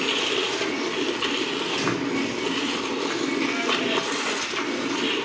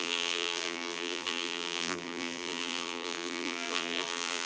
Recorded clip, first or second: first